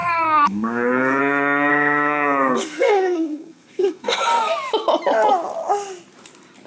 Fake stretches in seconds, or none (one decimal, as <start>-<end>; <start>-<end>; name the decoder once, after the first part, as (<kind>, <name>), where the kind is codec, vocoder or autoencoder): 0.0-1.2 (codec, SNAC); 1.7-4.5